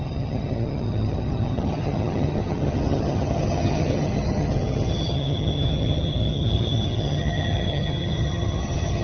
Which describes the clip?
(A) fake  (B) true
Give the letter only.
A